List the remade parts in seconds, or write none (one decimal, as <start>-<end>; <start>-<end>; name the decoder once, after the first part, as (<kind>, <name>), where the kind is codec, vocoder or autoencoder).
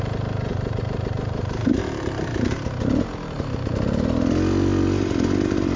0.5-1.8 (vocoder, BigVGAN v2)